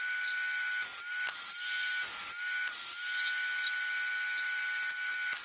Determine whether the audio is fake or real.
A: real